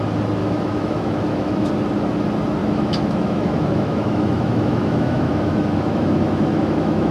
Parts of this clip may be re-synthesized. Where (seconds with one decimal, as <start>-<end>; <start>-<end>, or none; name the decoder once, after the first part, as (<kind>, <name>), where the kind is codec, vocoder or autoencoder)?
0.4-1.7 (autoencoder, DAC-VAE); 2.6-7.1